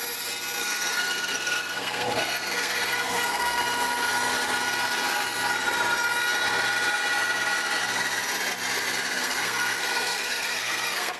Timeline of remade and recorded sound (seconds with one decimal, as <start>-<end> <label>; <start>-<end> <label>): 0.0-0.6 recorded; 0.6-3.6 remade; 3.6-9.2 recorded; 9.2-11.2 remade